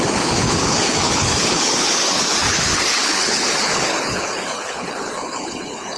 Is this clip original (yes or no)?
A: no